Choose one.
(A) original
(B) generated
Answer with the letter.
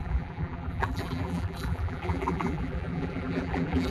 B